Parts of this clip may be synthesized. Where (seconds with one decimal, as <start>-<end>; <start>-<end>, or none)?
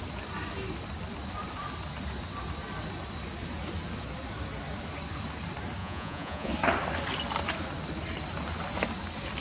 5.8-6.5